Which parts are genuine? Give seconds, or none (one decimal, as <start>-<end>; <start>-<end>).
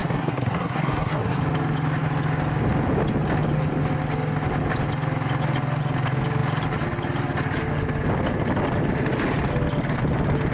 1.4-10.5